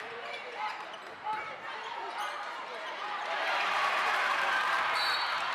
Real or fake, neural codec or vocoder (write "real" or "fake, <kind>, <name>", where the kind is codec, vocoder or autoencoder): fake, vocoder, BigVGAN v2